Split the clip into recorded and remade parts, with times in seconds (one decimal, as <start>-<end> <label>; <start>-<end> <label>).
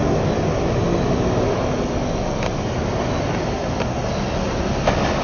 0.0-5.2 recorded